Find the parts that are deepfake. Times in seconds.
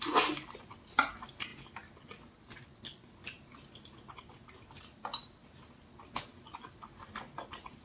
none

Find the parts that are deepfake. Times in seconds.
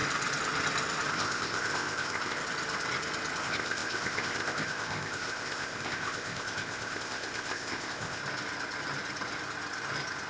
1.1-2.4 (codec, ZipCodec); 3.4-8.2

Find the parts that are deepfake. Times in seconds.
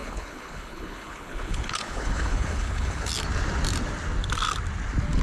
0.0-3.1 (codec, HILCodec)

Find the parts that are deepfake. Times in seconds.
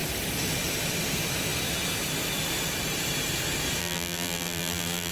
3.8-5.1 (vocoder, BigVGAN v2)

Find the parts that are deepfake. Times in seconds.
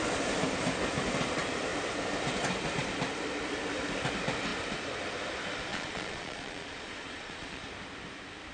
5.7-7.6 (vocoder, Vocos)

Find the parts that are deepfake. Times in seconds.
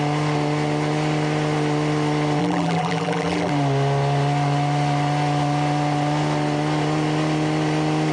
2.4-3.5 (vocoder, BigVGAN v2)